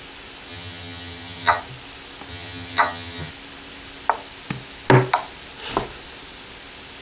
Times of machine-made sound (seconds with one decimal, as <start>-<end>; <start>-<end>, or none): 0.5-1.6; 2.3-3.3